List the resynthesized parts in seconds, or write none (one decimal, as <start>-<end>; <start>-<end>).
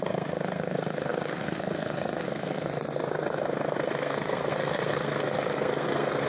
0.0-6.3